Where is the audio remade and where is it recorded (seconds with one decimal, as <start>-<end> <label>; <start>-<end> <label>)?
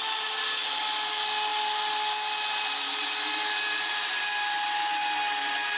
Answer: 0.0-5.8 recorded